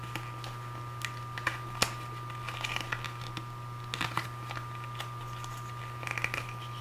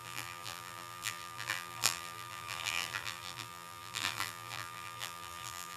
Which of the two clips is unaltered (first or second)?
first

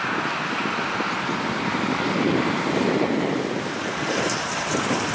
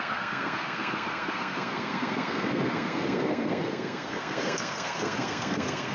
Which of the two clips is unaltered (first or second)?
first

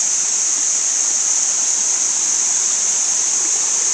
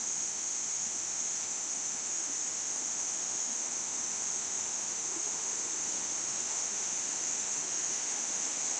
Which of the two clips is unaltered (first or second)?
first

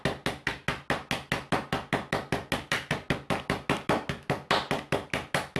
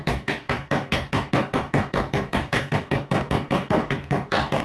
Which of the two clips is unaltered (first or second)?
first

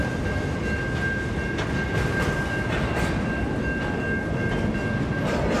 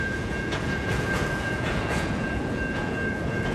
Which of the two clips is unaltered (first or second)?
first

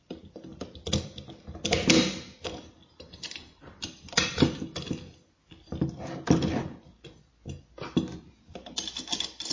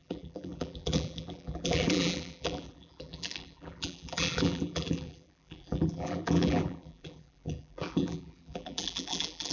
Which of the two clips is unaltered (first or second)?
first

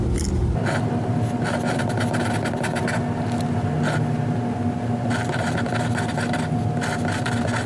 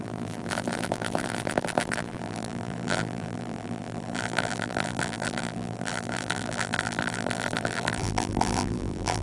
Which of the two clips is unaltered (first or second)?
first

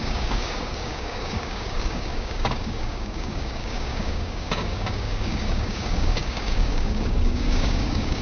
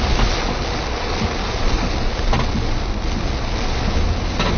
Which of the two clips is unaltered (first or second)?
second